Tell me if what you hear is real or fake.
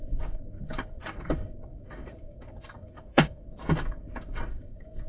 fake